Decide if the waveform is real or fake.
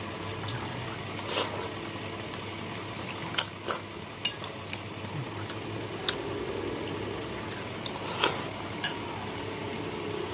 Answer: real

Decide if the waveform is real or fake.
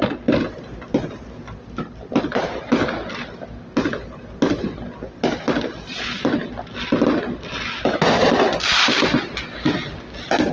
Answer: real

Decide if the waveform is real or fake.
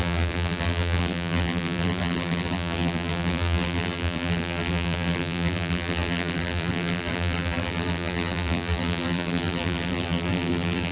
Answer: fake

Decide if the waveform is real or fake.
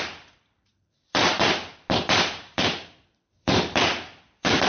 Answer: fake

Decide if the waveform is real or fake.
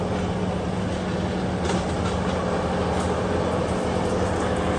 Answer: real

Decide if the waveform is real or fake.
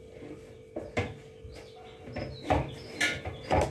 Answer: real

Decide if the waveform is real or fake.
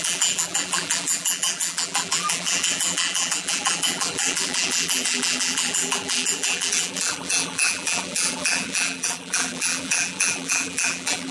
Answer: fake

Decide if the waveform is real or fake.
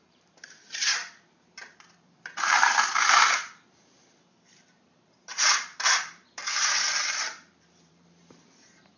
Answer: fake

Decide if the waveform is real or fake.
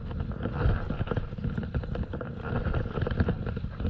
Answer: real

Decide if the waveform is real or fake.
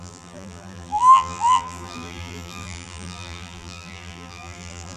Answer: fake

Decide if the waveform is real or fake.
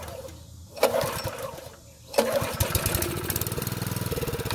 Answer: fake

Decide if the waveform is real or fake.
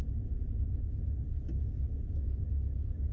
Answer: real